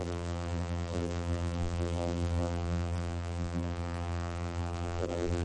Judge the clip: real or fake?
fake